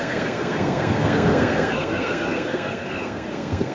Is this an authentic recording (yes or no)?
no